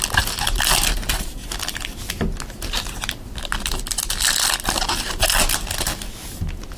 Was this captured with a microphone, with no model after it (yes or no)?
yes